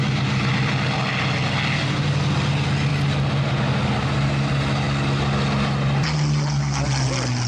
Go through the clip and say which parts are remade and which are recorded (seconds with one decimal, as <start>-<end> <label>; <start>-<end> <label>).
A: 0.0-7.5 recorded